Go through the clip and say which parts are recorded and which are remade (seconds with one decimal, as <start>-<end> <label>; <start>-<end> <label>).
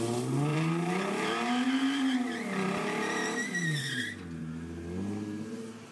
0.0-0.5 recorded; 0.5-4.0 remade; 4.0-5.9 recorded